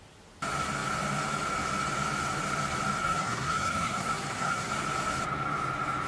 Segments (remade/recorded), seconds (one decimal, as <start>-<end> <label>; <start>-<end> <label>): 0.0-3.0 recorded; 3.0-4.7 remade; 4.7-6.1 recorded